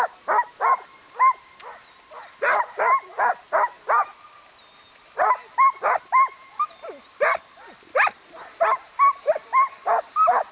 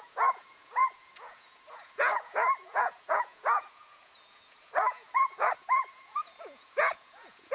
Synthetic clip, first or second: second